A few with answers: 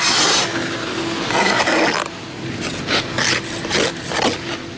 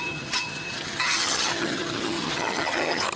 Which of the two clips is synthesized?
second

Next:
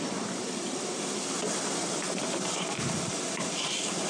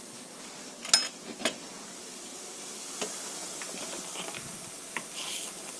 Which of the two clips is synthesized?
first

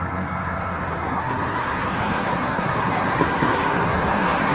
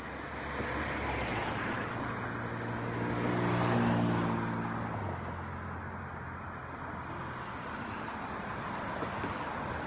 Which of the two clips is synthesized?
first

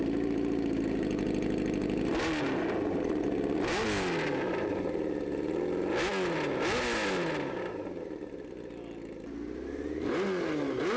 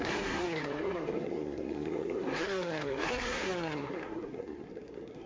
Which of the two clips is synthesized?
second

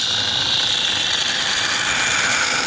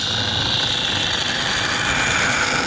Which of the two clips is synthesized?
first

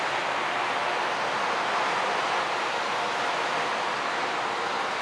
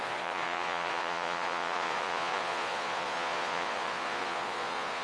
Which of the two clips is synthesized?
second